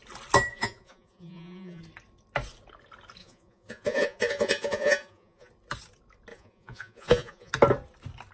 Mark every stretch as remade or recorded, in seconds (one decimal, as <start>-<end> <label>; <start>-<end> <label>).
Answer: 0.0-0.5 recorded; 0.5-1.8 remade; 1.8-3.2 recorded; 3.2-5.5 remade; 5.5-6.3 recorded; 6.3-7.5 remade; 7.5-8.3 recorded